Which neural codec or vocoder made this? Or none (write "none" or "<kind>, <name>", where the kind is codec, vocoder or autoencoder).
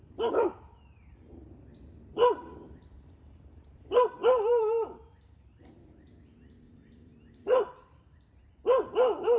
vocoder, BigVGAN v2